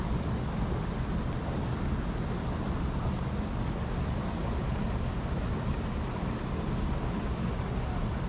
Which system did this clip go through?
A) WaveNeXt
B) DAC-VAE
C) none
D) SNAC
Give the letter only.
C